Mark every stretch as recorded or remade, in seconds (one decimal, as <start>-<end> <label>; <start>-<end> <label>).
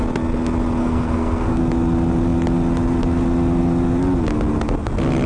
0.0-0.8 recorded; 0.8-1.6 remade; 1.6-5.3 recorded